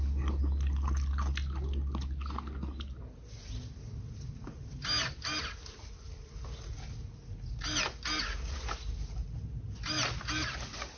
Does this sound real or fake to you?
real